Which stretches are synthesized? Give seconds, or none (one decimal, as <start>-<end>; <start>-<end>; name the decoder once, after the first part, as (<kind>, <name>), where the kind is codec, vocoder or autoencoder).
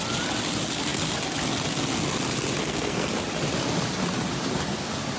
2.6-3.1 (codec, SNAC)